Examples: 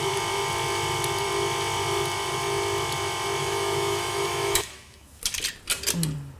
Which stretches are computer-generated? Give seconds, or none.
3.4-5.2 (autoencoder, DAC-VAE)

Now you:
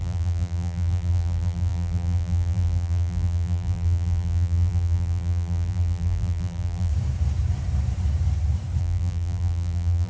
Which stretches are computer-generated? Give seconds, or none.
0.0-6.9 (vocoder, BigVGAN v2); 8.8-10.1

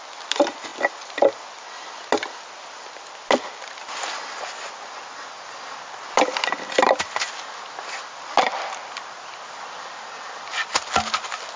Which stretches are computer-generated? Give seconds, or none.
none

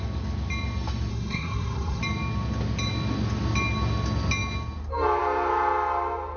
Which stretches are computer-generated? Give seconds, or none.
1.1-2.0 (codec, SNAC)